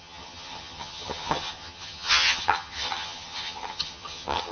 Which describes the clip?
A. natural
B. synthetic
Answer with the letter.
B